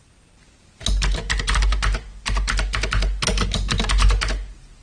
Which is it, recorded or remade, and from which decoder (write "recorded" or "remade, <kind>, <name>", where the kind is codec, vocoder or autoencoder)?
recorded